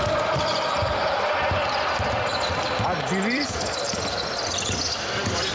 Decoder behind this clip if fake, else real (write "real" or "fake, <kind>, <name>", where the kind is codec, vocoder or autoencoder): fake, vocoder, BigVGAN v2